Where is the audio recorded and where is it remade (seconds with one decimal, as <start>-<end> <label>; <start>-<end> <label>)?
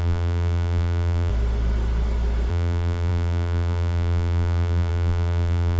0.0-1.3 remade; 1.3-2.5 recorded; 2.5-5.8 remade